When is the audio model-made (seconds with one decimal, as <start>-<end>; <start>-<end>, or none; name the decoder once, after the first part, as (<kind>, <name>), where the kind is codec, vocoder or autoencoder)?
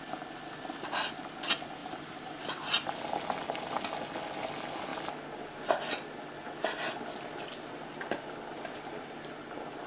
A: 1.8-3.0 (vocoder, BigVGAN v2)